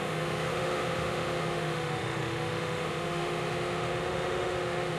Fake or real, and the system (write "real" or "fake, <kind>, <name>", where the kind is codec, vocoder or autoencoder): fake, autoencoder, DAC-VAE